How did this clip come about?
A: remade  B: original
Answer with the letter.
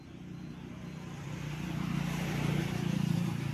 A